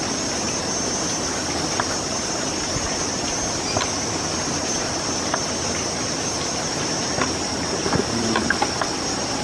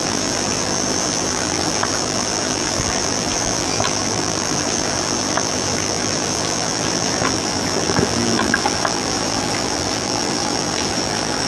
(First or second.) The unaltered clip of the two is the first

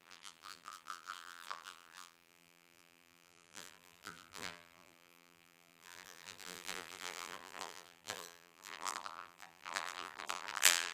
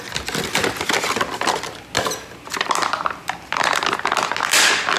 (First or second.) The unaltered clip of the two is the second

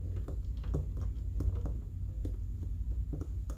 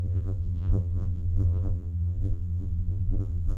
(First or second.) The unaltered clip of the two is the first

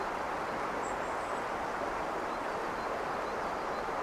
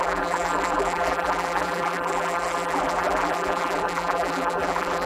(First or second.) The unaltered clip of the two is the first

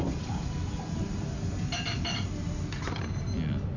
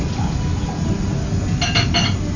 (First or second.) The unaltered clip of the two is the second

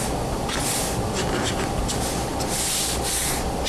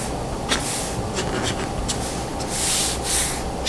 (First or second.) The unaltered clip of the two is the second